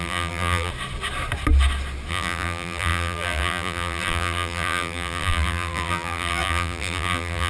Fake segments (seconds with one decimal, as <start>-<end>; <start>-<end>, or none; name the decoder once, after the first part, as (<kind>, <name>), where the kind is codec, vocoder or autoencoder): 0.0-0.7 (vocoder, BigVGAN v2); 2.1-7.5